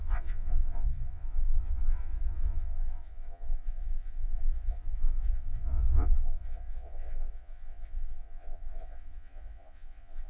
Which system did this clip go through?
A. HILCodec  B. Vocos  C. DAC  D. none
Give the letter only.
B